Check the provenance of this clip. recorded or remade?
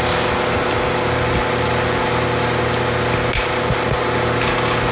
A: recorded